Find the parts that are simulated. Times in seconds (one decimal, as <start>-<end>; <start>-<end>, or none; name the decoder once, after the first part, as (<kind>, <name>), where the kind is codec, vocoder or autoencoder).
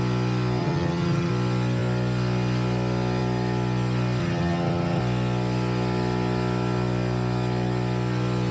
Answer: 0.6-1.3 (vocoder, HiFi-GAN); 4.2-5.0